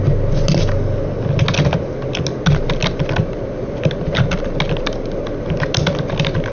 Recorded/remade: recorded